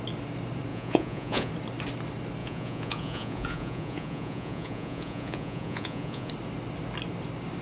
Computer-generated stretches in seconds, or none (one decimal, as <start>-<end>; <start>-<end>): 0.7-1.5; 2.4-6.3